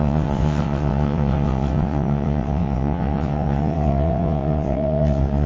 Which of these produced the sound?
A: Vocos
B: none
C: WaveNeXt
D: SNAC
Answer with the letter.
C